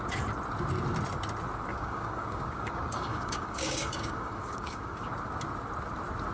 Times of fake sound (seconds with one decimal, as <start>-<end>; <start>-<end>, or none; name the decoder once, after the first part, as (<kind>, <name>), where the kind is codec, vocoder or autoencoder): 1.7-5.1 (codec, DAC)